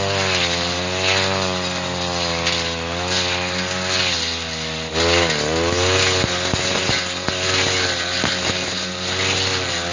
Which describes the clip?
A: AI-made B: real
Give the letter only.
B